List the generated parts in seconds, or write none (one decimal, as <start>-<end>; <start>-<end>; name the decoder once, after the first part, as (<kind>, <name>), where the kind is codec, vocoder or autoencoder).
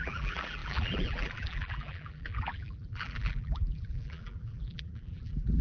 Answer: 0.0-5.6 (vocoder, BigVGAN v2)